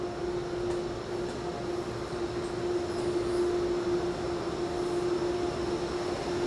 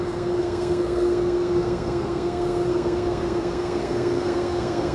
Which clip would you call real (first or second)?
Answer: first